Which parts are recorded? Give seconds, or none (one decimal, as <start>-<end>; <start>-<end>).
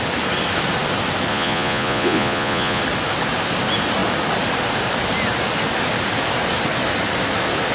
0.0-1.3; 2.8-7.7